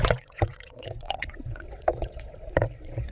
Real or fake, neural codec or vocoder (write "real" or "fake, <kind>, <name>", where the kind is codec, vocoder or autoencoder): fake, vocoder, WaveNeXt